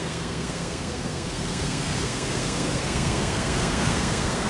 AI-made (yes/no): yes